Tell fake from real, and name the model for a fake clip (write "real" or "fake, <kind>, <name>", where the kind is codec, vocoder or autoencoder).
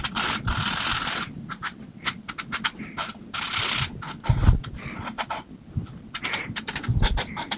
real